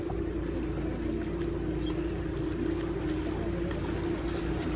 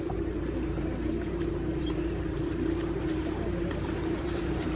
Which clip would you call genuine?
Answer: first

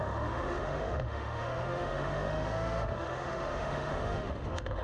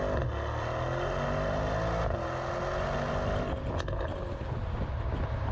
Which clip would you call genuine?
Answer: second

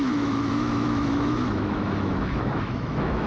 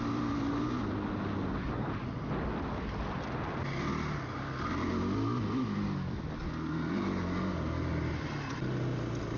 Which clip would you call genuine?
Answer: second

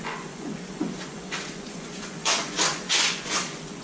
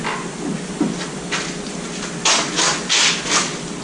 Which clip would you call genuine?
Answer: second